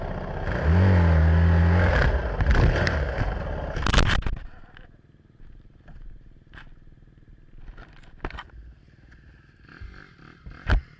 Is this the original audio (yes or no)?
yes